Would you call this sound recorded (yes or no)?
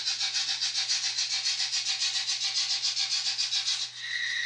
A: yes